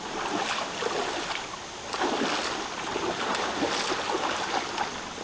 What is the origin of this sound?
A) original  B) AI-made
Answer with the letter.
A